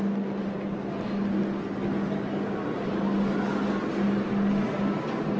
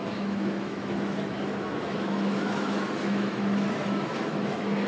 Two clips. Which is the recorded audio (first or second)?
first